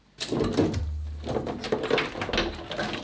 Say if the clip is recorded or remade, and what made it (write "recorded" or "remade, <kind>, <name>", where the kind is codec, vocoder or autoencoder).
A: recorded